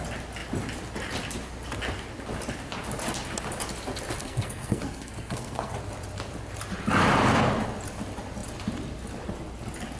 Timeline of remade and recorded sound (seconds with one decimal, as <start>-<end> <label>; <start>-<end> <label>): 0.0-4.2 recorded; 4.2-5.7 remade; 5.7-10.0 recorded